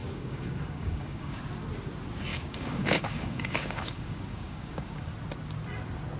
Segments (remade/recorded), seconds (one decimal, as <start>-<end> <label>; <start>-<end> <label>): 0.0-1.4 remade; 1.4-2.3 recorded; 2.3-5.1 remade; 5.1-6.2 recorded